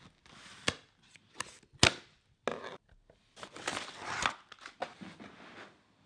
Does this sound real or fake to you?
real